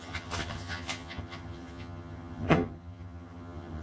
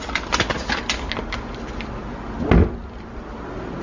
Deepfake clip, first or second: first